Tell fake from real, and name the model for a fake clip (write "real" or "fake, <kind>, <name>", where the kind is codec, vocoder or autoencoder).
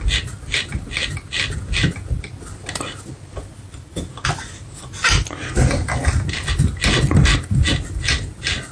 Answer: real